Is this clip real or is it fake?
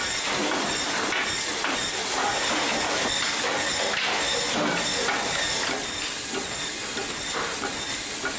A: real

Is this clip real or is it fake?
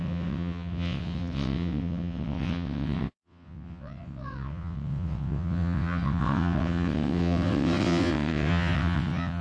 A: fake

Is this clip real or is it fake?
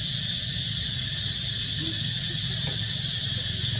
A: real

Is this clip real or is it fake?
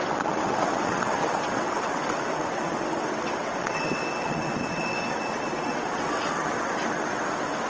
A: fake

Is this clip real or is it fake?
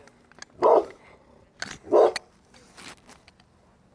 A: real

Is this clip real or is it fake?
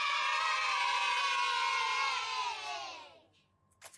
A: real